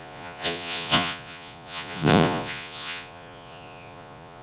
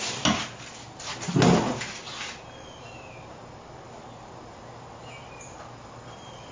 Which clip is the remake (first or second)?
first